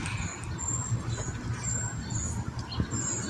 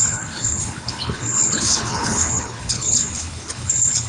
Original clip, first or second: first